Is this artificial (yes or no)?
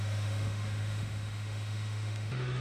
yes